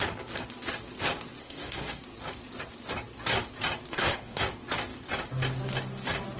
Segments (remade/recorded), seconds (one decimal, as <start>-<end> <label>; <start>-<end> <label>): 0.0-1.4 recorded; 1.4-2.0 remade; 2.0-3.9 recorded; 3.9-4.4 remade; 4.4-6.4 recorded